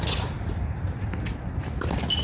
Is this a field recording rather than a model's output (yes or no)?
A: yes